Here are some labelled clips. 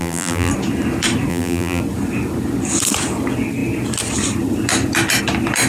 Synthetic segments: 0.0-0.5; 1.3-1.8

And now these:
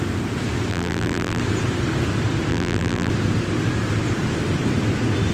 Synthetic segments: 0.7-1.4; 2.5-3.1

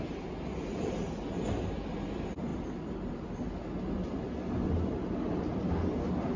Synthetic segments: none